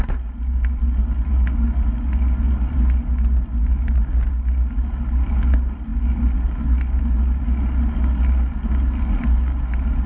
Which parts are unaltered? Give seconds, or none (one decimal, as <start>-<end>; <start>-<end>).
0.0-10.1